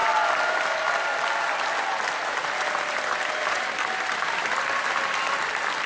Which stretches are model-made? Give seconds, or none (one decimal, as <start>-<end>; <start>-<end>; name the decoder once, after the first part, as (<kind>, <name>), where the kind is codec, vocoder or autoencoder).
none

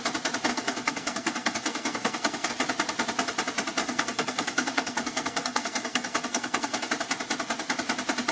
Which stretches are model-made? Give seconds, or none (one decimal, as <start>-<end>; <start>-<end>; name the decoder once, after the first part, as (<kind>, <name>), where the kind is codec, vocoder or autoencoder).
0.5-2.5 (codec, SNAC); 3.8-6.9

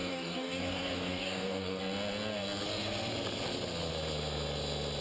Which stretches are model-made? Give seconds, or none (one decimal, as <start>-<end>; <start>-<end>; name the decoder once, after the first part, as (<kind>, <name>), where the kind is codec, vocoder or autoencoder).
0.0-1.8 (codec, DAC)

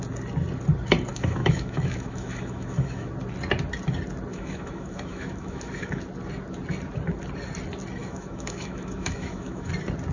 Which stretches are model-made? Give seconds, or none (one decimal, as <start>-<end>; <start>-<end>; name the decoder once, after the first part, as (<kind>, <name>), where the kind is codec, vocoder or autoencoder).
1.1-3.1 (autoencoder, DAC-VAE); 4.3-6.0; 8.0-9.7

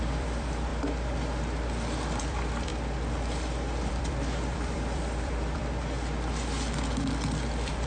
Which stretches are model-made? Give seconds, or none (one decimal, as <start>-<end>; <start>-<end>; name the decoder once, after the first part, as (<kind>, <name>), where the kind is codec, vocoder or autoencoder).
0.0-0.7 (vocoder, BigVGAN v2); 2.2-2.7; 3.9-5.6; 7.5-7.9